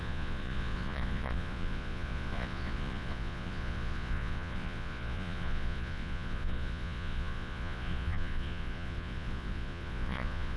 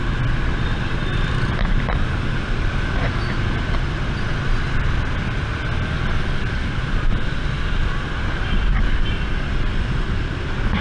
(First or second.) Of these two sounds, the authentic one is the second